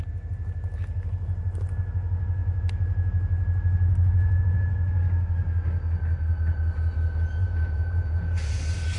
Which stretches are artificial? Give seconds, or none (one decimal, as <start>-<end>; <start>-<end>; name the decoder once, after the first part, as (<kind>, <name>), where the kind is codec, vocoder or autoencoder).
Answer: 7.4-8.6 (vocoder, Vocos)